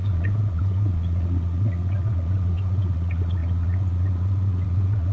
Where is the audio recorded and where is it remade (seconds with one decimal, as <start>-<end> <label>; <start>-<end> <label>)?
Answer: 0.0-5.1 remade